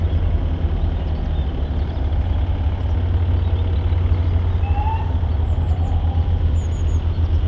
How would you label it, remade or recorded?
recorded